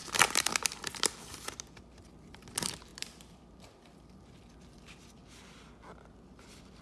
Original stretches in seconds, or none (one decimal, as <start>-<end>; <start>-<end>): 0.8-2.9; 4.4-6.8